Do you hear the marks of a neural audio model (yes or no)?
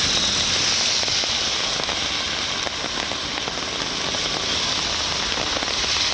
no